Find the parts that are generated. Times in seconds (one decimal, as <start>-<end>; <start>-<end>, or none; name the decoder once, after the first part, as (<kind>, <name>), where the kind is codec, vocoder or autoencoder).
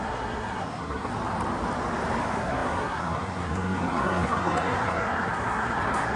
0.0-1.1 (codec, SNAC); 2.2-6.2